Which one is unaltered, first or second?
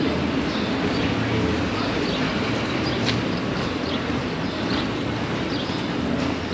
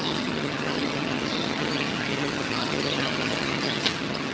first